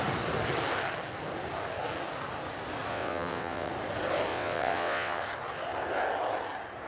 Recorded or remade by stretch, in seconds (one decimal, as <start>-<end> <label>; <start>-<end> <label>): 0.0-2.9 recorded; 2.9-3.7 remade; 3.7-4.3 recorded; 4.3-5.2 remade; 5.2-6.9 recorded